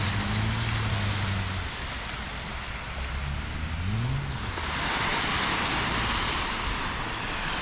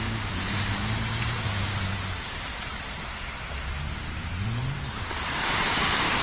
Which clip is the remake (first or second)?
second